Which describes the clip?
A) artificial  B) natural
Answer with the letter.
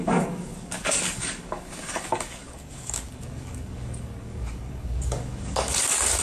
A